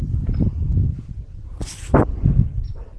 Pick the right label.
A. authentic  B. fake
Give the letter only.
A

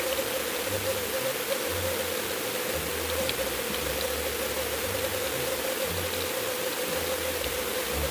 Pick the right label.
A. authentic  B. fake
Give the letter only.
A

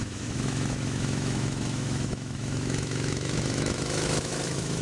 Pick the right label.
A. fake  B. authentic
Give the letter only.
A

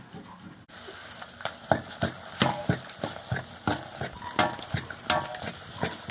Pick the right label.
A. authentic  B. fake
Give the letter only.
A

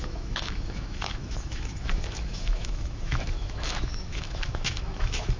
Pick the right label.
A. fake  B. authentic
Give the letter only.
A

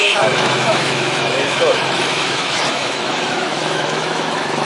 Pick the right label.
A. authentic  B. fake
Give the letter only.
B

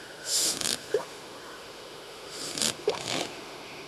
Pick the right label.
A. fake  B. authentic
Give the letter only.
A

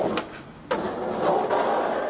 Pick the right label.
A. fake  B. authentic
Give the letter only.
B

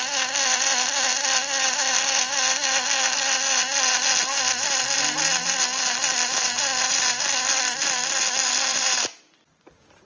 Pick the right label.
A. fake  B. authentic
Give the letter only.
B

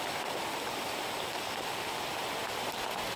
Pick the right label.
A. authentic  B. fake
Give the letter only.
A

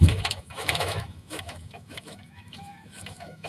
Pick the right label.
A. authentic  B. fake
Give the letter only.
B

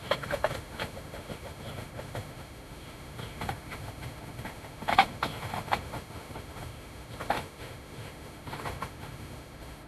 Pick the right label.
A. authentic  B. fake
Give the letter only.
B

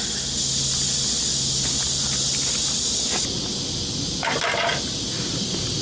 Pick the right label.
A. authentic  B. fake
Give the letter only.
A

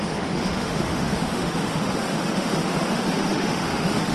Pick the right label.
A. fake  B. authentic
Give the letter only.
A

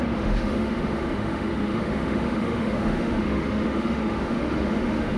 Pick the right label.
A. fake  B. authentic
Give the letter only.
A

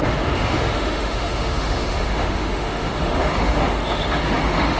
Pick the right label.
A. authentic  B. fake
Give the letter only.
B